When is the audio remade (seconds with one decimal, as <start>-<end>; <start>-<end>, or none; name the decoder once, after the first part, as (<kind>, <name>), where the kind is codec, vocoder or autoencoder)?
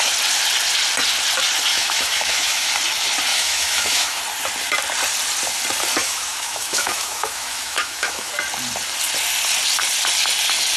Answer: 1.7-2.7 (autoencoder, DAC-VAE); 3.3-4.2; 6.0-8.3